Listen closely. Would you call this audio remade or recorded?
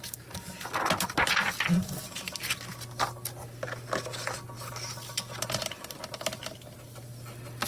recorded